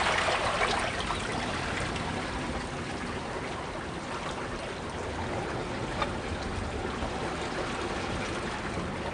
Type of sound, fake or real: real